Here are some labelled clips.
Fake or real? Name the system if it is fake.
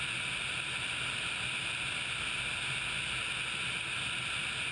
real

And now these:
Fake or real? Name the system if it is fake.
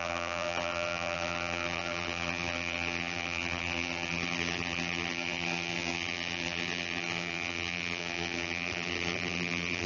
fake, vocoder, BigVGAN v2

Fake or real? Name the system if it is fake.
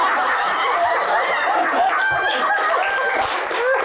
real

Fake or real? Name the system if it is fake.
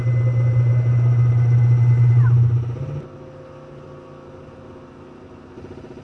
real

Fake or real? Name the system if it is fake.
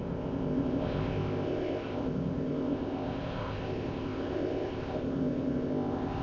fake, codec, ZipCodec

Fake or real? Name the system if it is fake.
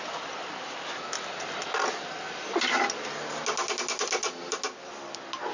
real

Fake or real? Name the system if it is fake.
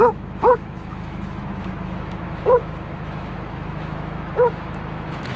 fake, autoencoder, DAC-VAE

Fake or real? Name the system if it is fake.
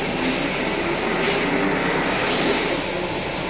real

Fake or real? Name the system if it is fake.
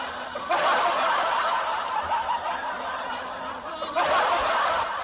fake, vocoder, BigVGAN v2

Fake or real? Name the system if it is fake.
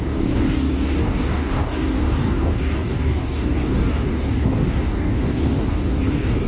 fake, codec, DAC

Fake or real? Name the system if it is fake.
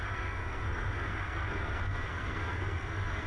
fake, codec, SNAC